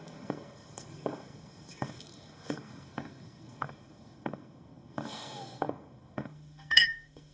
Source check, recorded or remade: remade